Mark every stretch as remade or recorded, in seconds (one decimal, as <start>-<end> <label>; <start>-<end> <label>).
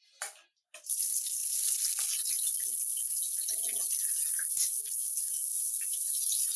0.0-6.6 recorded